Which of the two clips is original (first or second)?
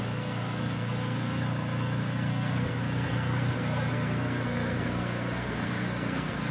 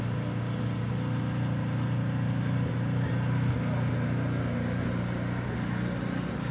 second